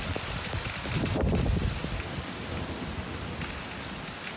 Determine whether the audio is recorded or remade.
recorded